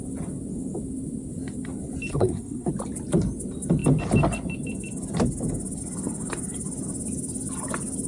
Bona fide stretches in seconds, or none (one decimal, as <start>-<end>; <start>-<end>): 0.0-2.1; 2.7-8.1